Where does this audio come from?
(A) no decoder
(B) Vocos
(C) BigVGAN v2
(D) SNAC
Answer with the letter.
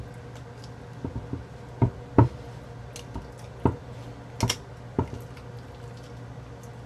A